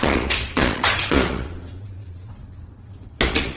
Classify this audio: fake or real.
fake